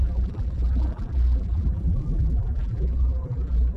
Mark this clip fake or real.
fake